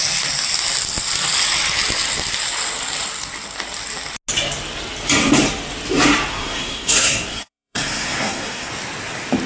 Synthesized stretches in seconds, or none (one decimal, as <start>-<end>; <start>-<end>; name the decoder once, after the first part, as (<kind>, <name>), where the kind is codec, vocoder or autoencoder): 6.3-8.7 (codec, SNAC)

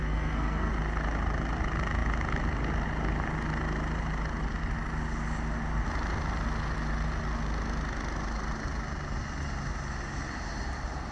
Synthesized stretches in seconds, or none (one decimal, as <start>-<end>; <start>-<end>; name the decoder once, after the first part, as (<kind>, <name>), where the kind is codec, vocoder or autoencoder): 0.0-0.7 (codec, SNAC)

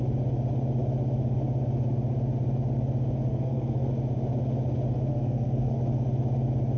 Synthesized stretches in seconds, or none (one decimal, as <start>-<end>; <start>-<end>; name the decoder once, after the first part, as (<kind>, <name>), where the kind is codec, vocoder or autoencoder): 3.3-3.9 (codec, SNAC); 5.1-5.8